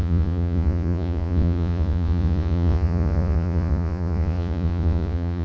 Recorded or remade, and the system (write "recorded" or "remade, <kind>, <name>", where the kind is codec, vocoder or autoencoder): remade, vocoder, Vocos